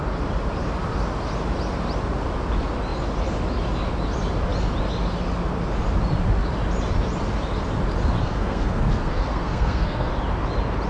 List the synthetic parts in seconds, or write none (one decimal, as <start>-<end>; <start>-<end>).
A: 8.2-10.1